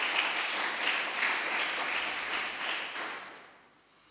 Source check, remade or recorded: recorded